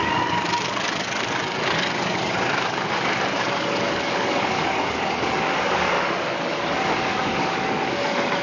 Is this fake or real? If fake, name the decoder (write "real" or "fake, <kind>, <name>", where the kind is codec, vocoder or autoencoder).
fake, codec, DAC